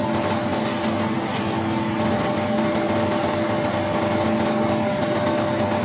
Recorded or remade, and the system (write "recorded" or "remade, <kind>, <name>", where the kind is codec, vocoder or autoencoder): recorded